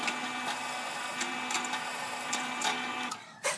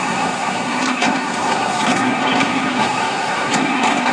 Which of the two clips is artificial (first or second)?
second